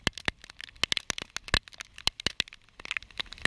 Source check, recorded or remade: recorded